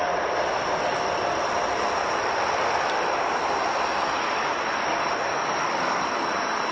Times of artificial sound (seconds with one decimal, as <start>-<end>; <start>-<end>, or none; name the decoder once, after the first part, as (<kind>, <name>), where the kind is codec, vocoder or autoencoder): 5.3-6.3 (codec, DAC)